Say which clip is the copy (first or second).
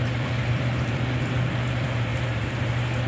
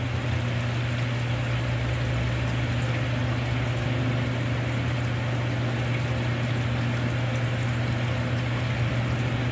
first